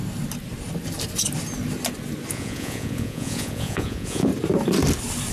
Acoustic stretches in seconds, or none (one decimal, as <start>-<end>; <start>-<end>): 0.0-2.3; 4.3-5.3